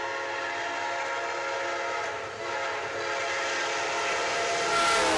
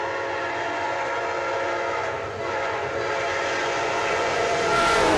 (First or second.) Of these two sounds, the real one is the first